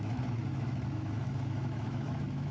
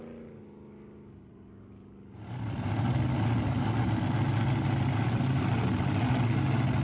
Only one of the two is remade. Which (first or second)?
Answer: first